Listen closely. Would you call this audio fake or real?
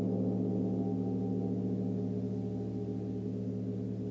real